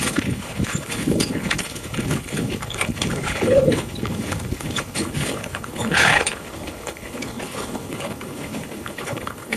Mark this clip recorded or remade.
remade